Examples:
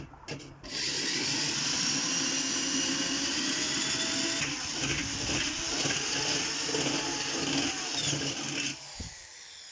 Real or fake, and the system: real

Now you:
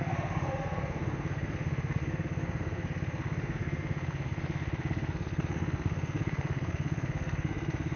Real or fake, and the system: fake, codec, SNAC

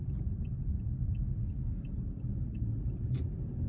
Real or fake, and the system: fake, vocoder, BigVGAN v2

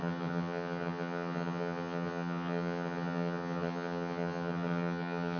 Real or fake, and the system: fake, vocoder, HiFi-GAN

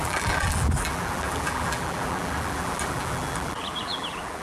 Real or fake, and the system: fake, vocoder, BigVGAN v2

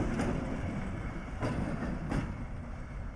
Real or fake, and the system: real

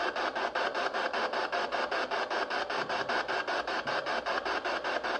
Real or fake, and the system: real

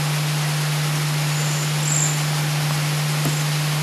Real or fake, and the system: real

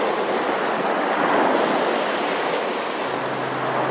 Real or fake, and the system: real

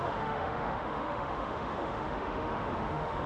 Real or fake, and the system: fake, autoencoder, DAC-VAE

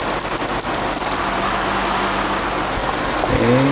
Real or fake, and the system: real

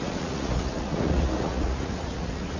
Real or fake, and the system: fake, vocoder, Vocos